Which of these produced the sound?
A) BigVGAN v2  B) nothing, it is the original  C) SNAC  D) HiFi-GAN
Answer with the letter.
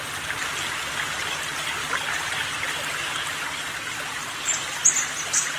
B